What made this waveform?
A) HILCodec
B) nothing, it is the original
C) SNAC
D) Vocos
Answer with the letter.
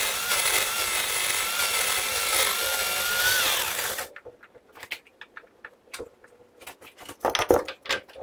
B